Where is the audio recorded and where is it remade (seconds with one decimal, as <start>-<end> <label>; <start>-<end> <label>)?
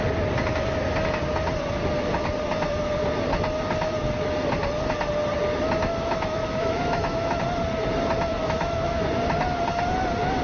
0.0-5.9 recorded; 5.9-7.4 remade; 7.4-8.3 recorded; 8.3-9.1 remade; 9.1-10.4 recorded